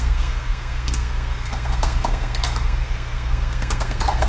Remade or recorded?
remade